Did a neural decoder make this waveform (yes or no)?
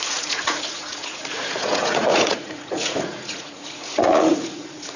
yes